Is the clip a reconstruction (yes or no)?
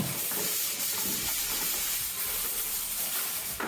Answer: yes